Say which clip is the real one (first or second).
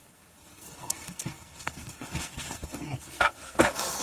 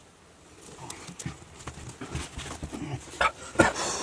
second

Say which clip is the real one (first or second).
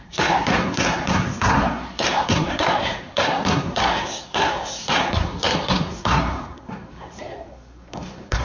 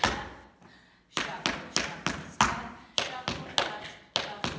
second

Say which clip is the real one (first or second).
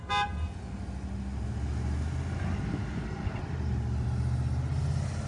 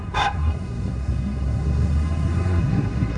first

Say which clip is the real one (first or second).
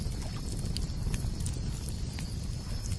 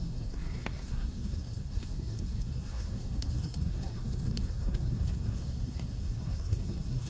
first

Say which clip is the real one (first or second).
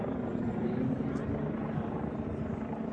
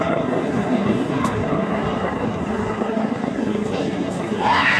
first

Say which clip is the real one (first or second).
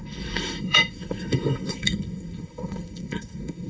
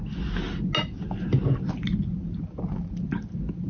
second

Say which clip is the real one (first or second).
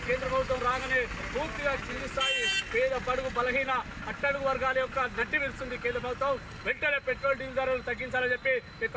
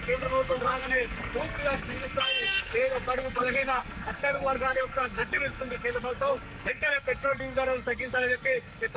first